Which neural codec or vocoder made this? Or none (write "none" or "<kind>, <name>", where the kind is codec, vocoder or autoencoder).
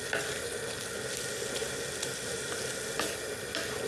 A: none